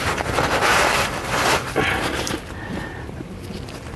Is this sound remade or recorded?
recorded